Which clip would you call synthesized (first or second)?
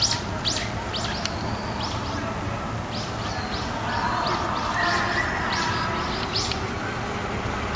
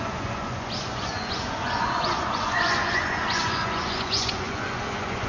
second